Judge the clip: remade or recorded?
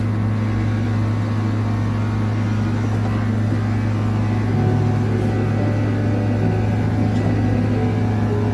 recorded